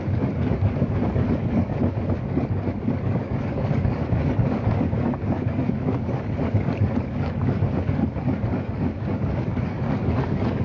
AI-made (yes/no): yes